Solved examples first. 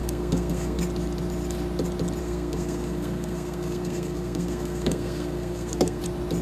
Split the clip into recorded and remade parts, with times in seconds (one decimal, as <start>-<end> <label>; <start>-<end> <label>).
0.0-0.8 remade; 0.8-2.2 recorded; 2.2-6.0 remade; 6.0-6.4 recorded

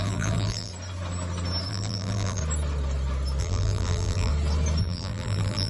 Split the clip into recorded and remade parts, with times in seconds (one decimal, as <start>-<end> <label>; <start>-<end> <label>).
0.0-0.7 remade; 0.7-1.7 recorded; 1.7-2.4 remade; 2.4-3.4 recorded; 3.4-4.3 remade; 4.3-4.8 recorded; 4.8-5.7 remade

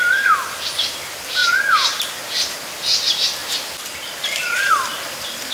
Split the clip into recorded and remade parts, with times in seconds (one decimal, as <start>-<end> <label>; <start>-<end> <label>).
0.0-5.5 recorded

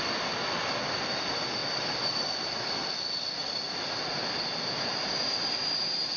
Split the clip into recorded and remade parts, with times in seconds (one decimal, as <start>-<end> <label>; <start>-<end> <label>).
0.0-6.2 recorded

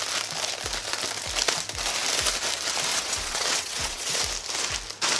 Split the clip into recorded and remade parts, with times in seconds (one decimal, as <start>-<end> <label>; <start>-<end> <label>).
0.0-2.9 recorded; 2.9-4.2 remade; 4.2-5.2 recorded

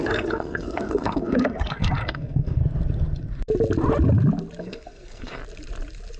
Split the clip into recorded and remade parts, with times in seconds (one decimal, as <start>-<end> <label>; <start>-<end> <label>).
0.0-2.6 remade; 2.6-4.6 recorded; 4.6-5.4 remade; 5.4-6.2 recorded

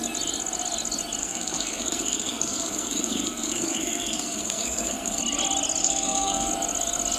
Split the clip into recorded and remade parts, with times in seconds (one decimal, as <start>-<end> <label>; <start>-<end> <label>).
0.0-1.2 recorded; 1.2-5.2 remade; 5.2-5.8 recorded; 5.8-6.5 remade; 6.5-7.2 recorded

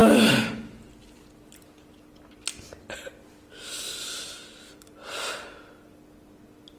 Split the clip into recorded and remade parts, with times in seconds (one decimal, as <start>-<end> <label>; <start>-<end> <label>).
0.0-0.5 remade; 0.5-6.8 recorded